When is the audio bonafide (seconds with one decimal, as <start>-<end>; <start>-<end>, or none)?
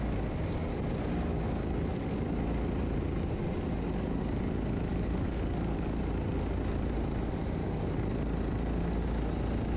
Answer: 0.0-3.4; 4.2-4.9; 6.0-7.6; 8.1-9.8